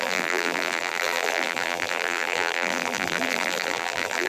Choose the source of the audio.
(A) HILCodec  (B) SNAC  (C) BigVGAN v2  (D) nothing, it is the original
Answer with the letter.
C